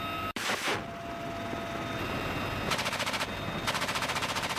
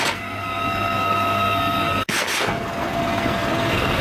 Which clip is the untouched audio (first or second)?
first